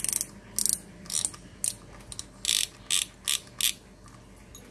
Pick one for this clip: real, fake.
real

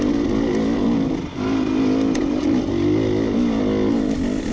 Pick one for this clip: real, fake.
real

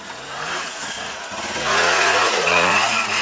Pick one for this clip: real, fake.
fake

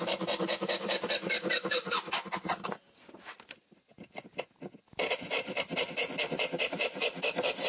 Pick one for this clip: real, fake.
real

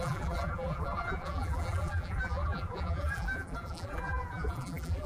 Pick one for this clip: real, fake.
fake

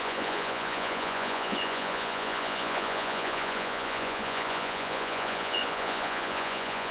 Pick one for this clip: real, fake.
fake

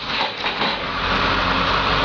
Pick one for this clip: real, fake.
fake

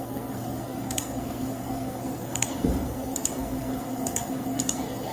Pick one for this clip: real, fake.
fake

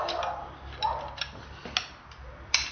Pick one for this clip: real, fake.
real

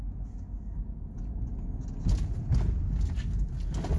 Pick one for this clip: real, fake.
real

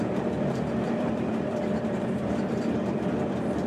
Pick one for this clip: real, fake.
fake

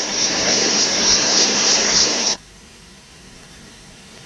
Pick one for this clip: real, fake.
fake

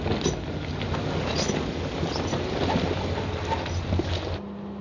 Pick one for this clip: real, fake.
real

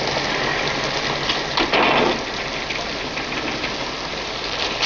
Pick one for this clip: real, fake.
real